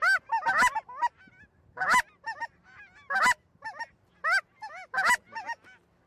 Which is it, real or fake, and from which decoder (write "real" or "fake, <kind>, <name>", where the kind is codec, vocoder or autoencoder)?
real